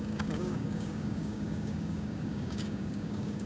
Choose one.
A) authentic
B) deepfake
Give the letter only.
B